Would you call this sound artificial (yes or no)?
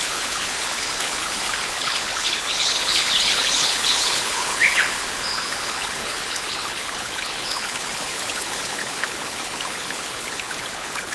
yes